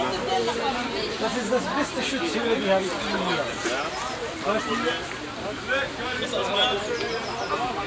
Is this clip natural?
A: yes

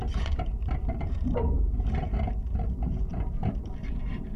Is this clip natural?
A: no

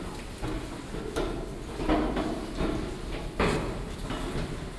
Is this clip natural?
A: yes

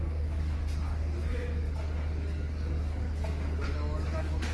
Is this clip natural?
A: no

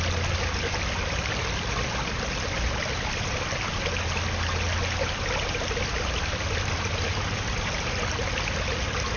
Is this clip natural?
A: yes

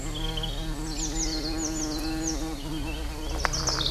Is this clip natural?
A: yes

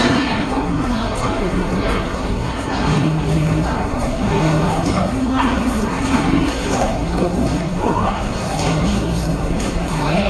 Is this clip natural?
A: no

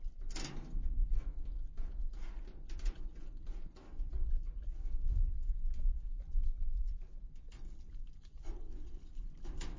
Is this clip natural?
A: yes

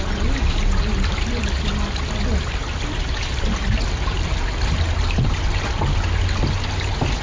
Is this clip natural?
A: yes